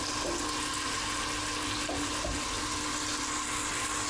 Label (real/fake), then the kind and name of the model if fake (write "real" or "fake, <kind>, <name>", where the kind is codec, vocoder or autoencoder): real